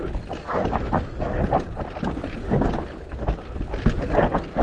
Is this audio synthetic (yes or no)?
no